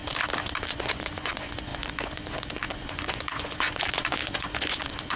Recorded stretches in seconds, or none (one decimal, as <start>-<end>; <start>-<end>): 0.0-0.7